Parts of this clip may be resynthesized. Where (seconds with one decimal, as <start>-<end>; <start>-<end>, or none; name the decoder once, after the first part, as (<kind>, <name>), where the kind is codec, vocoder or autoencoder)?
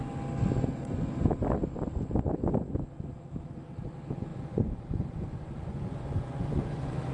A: 4.3-7.1 (vocoder, Vocos)